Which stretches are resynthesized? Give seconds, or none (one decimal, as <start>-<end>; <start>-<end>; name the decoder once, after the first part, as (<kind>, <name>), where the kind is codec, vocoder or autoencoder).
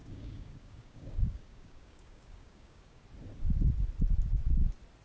0.0-3.0 (codec, DAC)